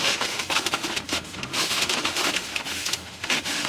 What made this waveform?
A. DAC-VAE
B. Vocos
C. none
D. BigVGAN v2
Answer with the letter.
A